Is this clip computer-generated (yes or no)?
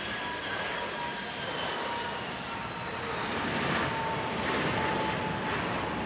no